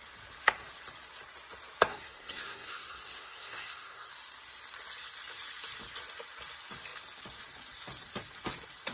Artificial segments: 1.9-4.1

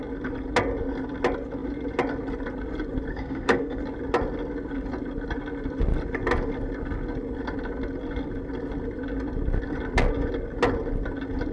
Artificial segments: 3.1-3.8

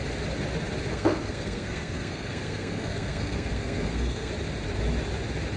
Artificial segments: 0.9-4.3

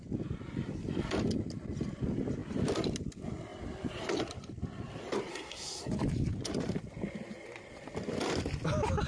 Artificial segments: 5.3-5.9